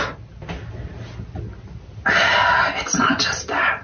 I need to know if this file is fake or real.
real